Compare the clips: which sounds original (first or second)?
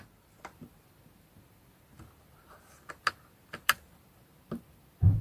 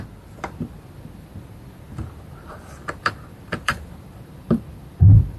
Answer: first